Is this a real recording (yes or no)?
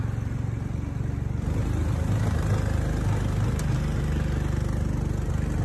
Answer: yes